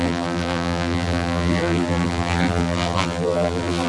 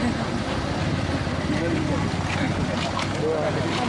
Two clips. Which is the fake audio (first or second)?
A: first